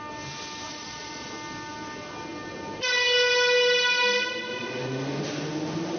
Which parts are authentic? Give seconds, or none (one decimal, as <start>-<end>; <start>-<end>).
0.0-0.7; 1.3-6.0